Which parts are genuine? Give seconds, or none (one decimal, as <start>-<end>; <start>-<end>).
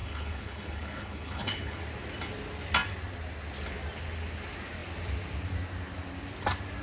1.8-6.8